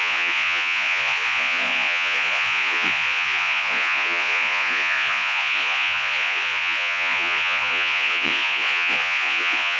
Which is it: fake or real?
fake